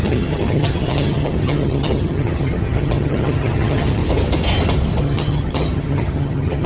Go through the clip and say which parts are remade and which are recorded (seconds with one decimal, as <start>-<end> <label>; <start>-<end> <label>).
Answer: 0.0-4.0 remade; 4.0-5.0 recorded; 5.0-6.7 remade